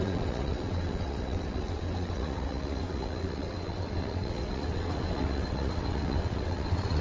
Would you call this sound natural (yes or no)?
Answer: no